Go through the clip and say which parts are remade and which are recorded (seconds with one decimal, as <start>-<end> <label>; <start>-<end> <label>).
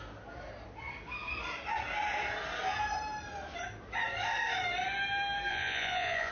0.0-5.5 recorded; 5.5-6.3 remade